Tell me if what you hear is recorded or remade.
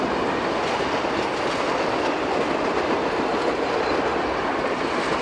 recorded